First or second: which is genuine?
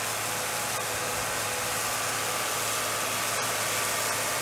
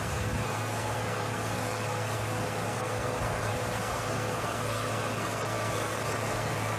first